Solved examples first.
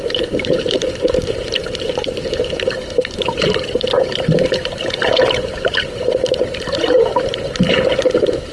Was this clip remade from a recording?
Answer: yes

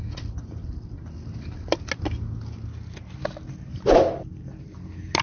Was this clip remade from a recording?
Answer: no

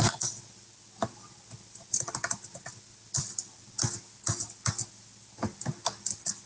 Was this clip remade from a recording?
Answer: no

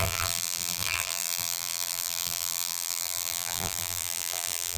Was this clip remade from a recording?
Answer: yes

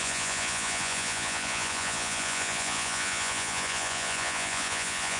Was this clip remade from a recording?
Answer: yes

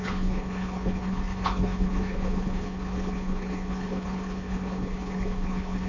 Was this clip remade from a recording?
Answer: yes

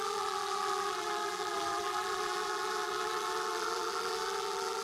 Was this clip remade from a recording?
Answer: yes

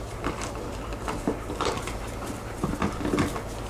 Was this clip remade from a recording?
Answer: no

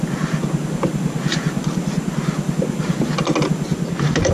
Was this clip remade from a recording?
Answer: no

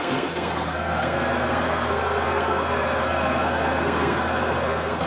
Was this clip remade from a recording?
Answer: yes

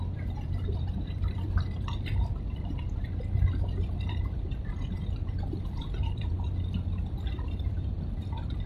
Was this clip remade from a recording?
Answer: yes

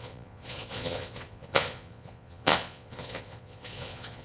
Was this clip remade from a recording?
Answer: yes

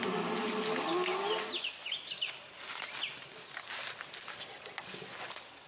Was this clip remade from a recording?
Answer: no